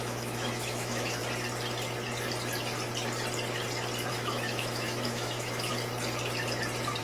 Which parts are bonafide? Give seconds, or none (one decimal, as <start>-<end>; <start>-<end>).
1.2-4.1; 5.7-7.0